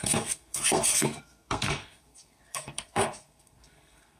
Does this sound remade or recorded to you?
remade